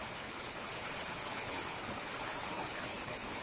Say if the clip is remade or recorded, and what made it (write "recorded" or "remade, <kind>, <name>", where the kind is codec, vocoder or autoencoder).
remade, codec, HILCodec